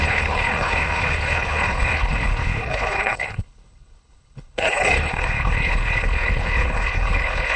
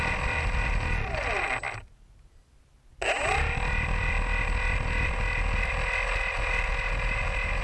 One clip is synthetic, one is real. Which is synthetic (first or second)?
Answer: first